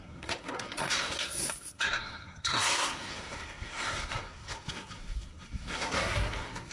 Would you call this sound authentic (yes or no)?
no